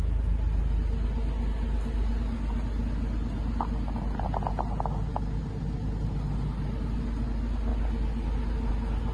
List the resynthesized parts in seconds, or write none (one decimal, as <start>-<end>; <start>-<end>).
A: none